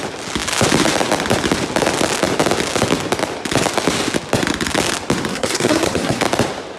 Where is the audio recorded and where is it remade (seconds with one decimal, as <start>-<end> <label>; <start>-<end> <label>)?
0.0-5.3 recorded; 5.3-6.2 remade; 6.2-6.8 recorded